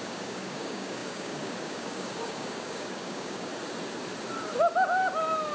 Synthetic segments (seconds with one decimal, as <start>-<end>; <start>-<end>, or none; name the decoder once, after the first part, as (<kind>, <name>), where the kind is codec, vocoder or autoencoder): 0.0-3.5 (codec, DAC)